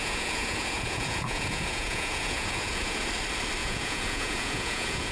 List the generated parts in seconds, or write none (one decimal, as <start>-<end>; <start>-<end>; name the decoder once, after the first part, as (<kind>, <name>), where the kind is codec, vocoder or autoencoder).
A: 0.0-3.1 (vocoder, Vocos); 3.6-5.1